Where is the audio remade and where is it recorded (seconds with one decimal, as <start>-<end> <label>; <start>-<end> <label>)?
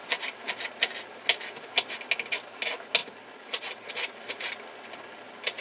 0.0-5.6 recorded